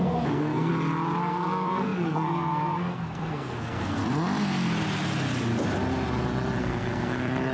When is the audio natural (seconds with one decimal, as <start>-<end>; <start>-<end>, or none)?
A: 0.7-1.2; 4.0-6.6